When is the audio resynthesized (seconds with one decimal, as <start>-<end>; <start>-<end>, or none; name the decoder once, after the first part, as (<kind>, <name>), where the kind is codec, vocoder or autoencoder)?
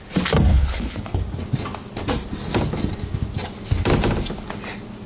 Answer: 0.5-1.2 (codec, HILCodec)